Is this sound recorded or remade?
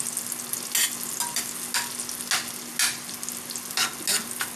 recorded